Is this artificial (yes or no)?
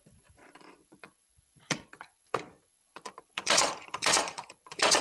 yes